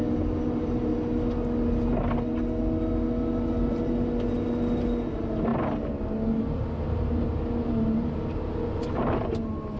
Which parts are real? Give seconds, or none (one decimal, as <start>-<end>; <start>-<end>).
0.0-9.8